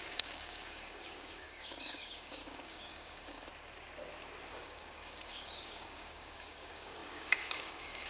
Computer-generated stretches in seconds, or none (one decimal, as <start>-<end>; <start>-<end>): 0.0-3.5; 4.5-8.1